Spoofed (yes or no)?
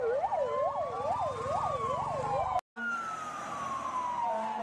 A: no